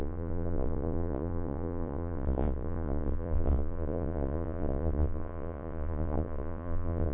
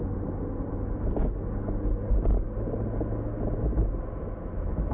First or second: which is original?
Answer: second